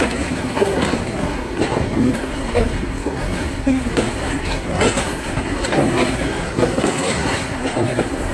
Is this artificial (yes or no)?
yes